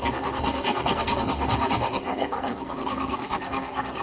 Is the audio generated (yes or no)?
yes